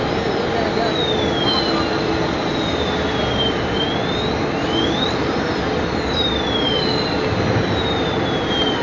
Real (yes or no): yes